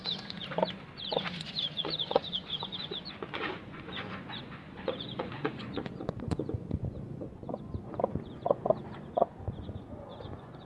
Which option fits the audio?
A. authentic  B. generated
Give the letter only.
B